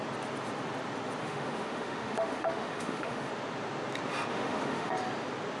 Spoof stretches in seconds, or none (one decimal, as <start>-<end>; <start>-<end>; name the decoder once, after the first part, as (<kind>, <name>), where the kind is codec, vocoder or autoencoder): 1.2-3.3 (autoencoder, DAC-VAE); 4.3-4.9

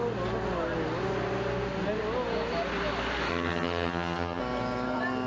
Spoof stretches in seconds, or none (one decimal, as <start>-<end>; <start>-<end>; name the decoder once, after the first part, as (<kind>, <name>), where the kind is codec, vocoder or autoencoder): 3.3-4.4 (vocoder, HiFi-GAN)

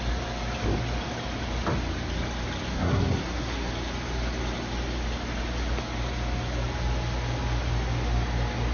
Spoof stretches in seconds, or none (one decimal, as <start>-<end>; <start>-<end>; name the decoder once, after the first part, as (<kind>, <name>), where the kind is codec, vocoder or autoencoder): 2.7-3.7 (codec, SNAC)

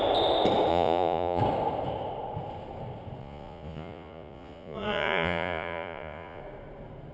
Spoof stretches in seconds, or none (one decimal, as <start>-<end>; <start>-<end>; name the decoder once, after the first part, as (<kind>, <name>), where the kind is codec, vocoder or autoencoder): 0.7-1.4 (vocoder, Vocos); 3.2-6.4

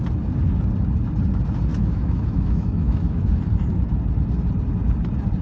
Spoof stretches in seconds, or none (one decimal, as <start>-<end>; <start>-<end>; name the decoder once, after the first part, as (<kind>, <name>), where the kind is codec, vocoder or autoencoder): 1.7-3.3 (autoencoder, DAC-VAE)

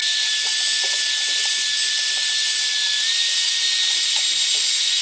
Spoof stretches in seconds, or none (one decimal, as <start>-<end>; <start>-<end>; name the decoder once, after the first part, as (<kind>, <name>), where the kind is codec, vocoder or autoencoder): none